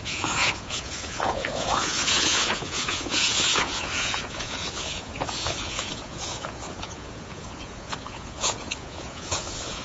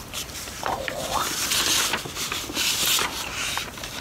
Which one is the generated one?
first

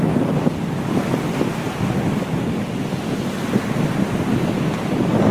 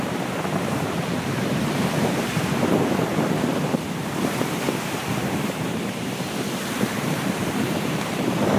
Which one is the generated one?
second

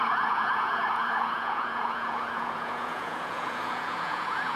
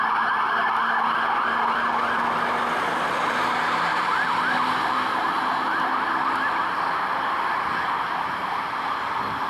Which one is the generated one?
first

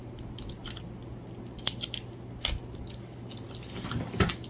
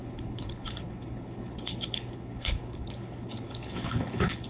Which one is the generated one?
second